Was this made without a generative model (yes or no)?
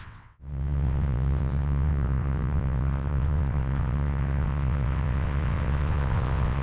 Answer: no